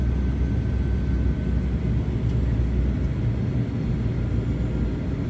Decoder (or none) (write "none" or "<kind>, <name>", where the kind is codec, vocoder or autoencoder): none